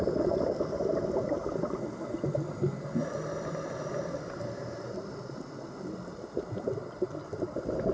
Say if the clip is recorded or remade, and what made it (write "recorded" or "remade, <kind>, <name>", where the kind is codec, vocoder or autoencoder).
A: recorded